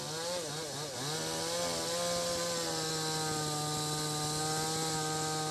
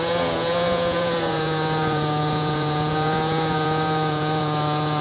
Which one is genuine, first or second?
first